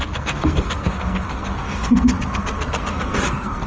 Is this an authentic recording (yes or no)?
no